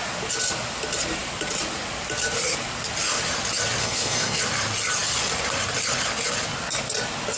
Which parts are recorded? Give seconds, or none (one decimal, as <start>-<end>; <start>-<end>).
0.0-3.8; 4.4-7.4